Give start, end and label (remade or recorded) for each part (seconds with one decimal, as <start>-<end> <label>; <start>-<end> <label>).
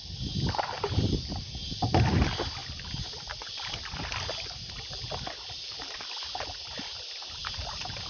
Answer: 0.0-8.1 recorded